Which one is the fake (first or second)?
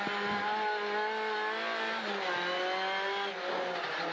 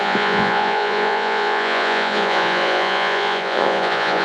second